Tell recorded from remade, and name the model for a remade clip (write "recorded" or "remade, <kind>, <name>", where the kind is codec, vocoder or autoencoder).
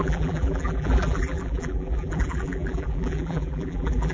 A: remade, vocoder, BigVGAN v2